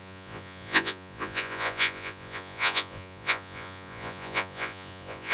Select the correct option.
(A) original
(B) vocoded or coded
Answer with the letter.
B